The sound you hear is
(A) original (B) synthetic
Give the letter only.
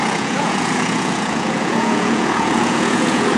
B